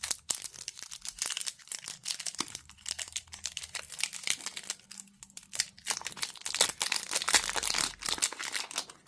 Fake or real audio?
real